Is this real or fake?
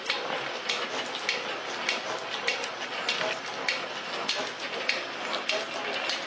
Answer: real